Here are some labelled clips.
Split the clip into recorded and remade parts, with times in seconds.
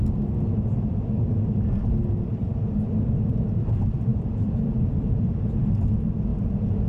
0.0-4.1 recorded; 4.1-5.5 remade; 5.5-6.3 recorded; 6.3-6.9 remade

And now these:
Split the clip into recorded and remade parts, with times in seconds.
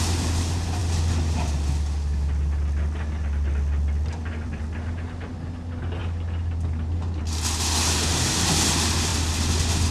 0.0-0.8 recorded; 0.8-5.3 remade; 5.3-6.0 recorded; 6.0-7.2 remade; 7.2-9.1 recorded; 9.1-9.9 remade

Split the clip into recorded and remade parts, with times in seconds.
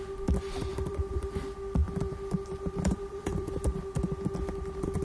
0.0-0.7 recorded; 0.7-1.4 remade; 1.4-1.8 recorded; 1.8-3.8 remade; 3.8-5.0 recorded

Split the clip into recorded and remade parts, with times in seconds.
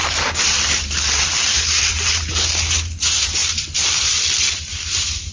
0.0-1.6 remade; 1.6-3.4 recorded; 3.4-4.6 remade; 4.6-5.3 recorded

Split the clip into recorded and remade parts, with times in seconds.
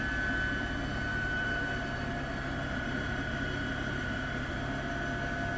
0.0-1.1 recorded; 1.1-4.5 remade; 4.5-5.6 recorded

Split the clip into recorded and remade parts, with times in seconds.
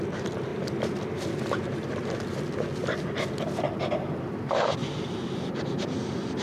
0.0-0.5 recorded; 0.5-2.4 remade; 2.4-4.8 recorded; 4.8-5.6 remade; 5.6-6.4 recorded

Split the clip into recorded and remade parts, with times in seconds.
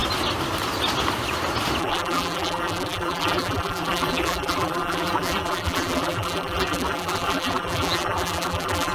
0.0-1.8 recorded; 1.8-8.9 remade